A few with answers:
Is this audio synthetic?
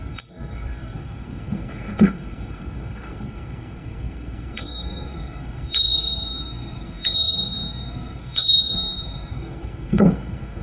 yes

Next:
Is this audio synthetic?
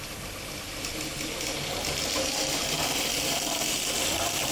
no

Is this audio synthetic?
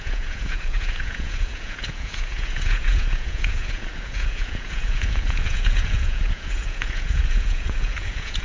yes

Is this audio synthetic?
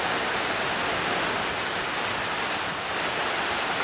no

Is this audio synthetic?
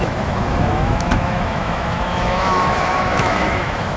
yes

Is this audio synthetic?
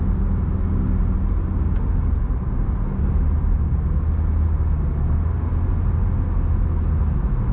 no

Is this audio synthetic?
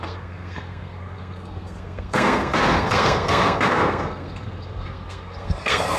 yes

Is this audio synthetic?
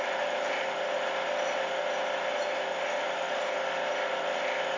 no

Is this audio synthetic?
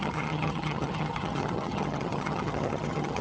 yes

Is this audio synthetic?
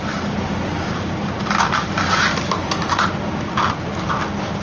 no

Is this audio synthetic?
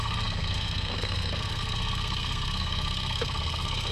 yes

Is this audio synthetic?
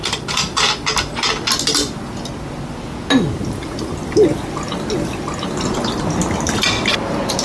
no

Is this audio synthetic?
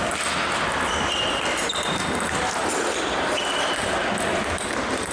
no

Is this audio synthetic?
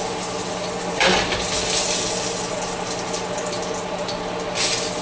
no